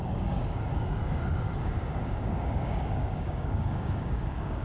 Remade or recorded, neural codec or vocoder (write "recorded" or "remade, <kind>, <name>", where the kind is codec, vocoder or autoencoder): remade, codec, DAC